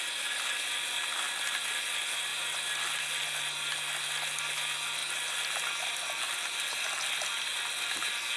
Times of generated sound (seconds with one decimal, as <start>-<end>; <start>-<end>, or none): none